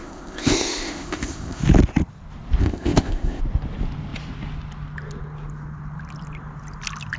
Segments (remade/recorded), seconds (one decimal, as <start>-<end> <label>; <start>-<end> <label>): 0.0-1.6 remade; 1.6-2.6 recorded; 2.6-3.4 remade; 3.4-7.2 recorded